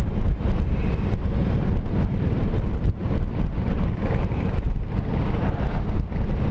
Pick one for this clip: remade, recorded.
recorded